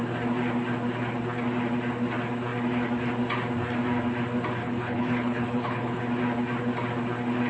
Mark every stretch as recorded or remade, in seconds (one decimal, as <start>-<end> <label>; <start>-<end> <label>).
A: 0.0-4.6 recorded; 4.6-6.0 remade; 6.0-7.5 recorded